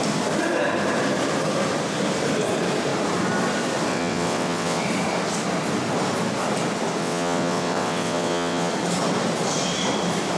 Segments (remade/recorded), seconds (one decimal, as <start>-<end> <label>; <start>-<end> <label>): 0.0-3.9 recorded; 3.9-4.8 remade; 4.8-7.0 recorded; 7.0-8.7 remade; 8.7-10.4 recorded